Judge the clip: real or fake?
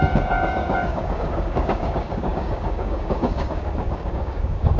fake